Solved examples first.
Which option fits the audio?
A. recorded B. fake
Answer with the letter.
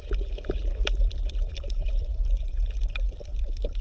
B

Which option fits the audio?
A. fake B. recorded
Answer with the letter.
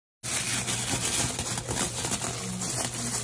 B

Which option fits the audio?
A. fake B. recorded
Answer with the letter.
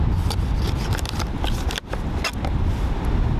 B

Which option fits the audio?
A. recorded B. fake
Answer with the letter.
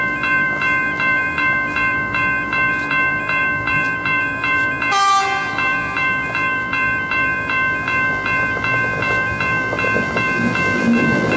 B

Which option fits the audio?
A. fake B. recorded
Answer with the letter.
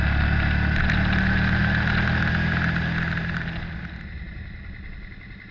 B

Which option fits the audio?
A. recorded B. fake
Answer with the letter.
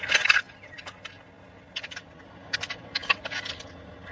A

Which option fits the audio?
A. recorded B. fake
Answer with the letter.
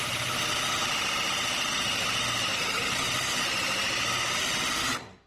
A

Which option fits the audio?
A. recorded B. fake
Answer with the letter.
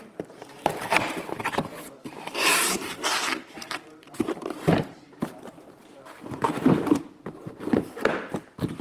B